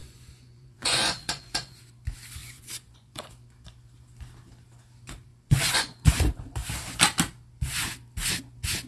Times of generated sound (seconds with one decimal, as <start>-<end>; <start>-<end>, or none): 0.0-1.8; 2.4-3.3; 5.3-6.1